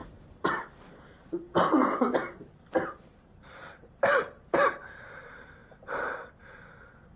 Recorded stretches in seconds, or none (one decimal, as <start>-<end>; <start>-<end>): 0.8-2.2; 4.4-7.2